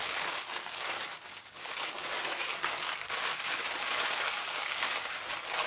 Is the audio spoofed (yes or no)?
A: yes